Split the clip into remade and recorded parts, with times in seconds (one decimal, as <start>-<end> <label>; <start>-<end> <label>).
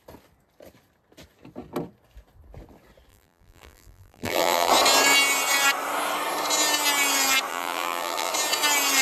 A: 0.0-3.1 recorded; 3.1-4.7 remade; 4.7-7.5 recorded; 7.5-8.3 remade; 8.3-9.0 recorded